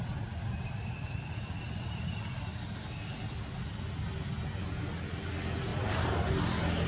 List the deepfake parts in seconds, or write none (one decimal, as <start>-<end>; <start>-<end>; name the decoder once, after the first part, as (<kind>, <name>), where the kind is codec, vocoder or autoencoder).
5.7-6.3 (vocoder, BigVGAN v2)

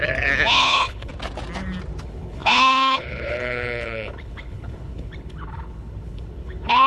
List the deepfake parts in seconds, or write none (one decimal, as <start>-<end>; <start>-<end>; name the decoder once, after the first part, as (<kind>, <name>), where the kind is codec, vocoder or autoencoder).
0.5-1.1 (codec, HILCodec); 2.0-6.9

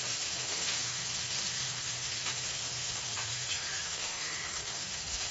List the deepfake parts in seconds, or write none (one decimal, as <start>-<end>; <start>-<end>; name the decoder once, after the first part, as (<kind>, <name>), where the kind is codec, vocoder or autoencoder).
0.0-5.3 (autoencoder, DAC-VAE)

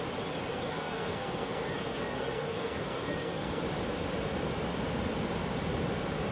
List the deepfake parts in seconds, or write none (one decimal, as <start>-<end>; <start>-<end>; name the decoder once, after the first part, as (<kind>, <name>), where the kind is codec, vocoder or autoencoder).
0.5-3.6 (codec, SNAC)